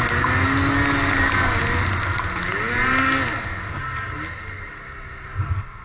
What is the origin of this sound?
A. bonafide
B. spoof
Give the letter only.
A